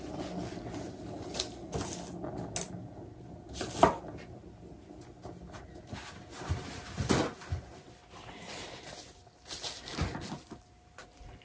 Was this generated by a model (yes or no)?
no